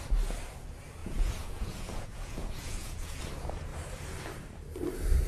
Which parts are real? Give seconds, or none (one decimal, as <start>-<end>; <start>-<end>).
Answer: 0.0-1.0; 3.2-5.3